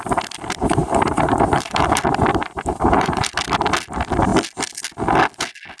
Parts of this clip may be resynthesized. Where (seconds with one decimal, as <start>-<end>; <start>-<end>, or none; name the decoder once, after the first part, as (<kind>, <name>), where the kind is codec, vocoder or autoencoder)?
0.8-2.0 (vocoder, BigVGAN v2); 2.4-3.3